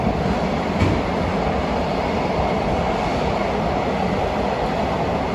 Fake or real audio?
real